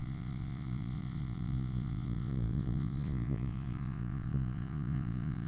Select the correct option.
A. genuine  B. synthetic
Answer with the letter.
B